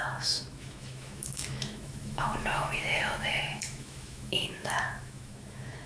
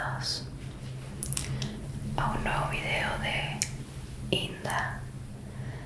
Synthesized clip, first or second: first